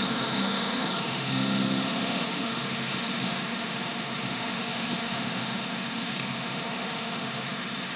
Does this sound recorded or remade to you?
remade